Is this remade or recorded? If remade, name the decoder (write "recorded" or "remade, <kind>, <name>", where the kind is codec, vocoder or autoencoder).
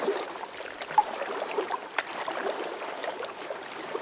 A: remade, vocoder, BigVGAN v2